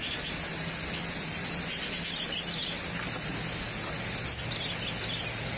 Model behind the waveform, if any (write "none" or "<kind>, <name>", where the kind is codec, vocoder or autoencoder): none